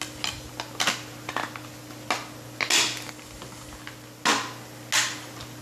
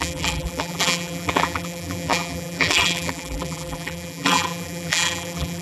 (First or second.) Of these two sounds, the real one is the first